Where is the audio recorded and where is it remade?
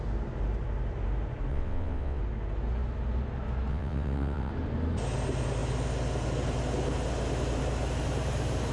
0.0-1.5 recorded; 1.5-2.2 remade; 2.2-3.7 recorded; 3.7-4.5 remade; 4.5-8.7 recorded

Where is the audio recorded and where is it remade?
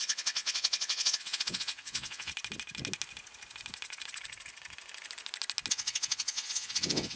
0.0-2.3 remade; 2.3-5.7 recorded; 5.7-7.2 remade